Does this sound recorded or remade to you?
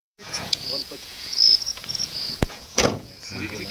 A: remade